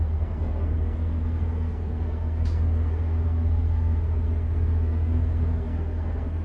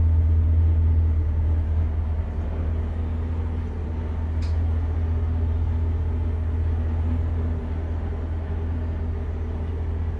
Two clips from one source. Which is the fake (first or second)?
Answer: first